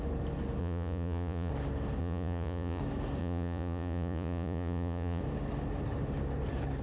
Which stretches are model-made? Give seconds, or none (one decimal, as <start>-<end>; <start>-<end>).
0.6-1.5; 2.0-2.8; 3.2-5.2